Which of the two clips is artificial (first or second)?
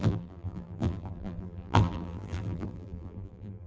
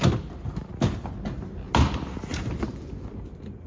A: first